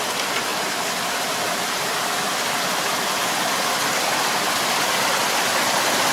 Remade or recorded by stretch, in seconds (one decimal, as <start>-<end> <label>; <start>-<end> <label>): 0.0-0.5 recorded; 0.5-4.2 remade; 4.2-6.1 recorded